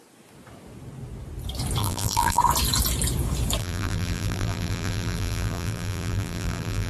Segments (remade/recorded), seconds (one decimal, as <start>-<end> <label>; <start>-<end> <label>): 0.0-1.8 recorded; 1.8-2.4 remade; 2.4-3.6 recorded; 3.6-6.9 remade

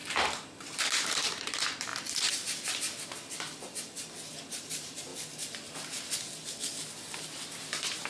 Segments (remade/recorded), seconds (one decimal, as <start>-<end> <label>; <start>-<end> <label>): 0.0-0.8 recorded; 0.8-1.9 remade; 1.9-4.3 recorded; 4.3-5.1 remade; 5.1-7.2 recorded; 7.2-8.1 remade

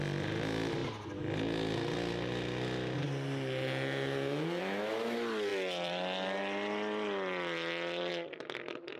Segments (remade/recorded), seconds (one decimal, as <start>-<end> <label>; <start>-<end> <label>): 0.0-5.5 recorded; 5.5-8.1 remade; 8.1-9.0 recorded

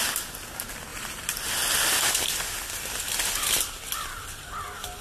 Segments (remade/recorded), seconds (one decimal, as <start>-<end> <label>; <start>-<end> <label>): 0.0-5.0 recorded

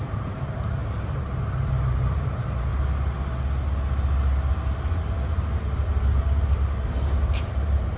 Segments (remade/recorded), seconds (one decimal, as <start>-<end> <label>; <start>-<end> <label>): 0.0-2.7 remade; 2.7-7.5 recorded; 7.5-8.0 remade

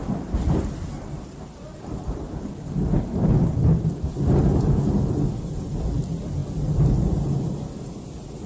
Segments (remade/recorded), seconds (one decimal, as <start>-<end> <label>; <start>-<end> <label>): 0.0-0.9 remade; 0.9-2.0 recorded; 2.0-3.0 remade; 3.0-8.5 recorded

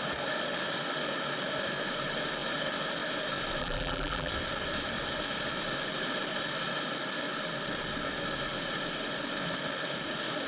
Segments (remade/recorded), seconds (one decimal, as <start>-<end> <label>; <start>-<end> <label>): 0.0-3.6 recorded; 3.6-4.3 remade; 4.3-10.5 recorded

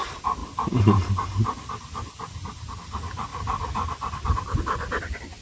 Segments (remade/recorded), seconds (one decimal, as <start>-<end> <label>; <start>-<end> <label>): 0.0-0.4 recorded; 0.4-1.7 remade; 1.7-5.4 recorded